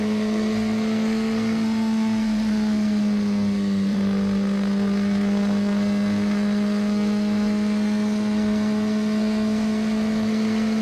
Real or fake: fake